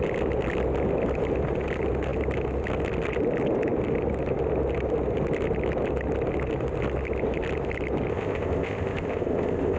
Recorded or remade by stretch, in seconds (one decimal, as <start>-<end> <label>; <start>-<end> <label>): 0.0-8.1 recorded; 8.1-9.8 remade